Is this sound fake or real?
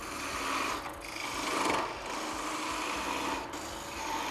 real